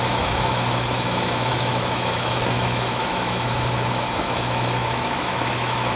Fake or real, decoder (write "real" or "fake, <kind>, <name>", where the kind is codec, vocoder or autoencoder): fake, autoencoder, DAC-VAE